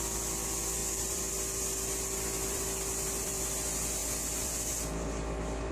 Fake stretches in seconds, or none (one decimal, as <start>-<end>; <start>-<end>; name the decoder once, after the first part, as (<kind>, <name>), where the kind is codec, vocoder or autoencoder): 0.0-5.7 (vocoder, BigVGAN v2)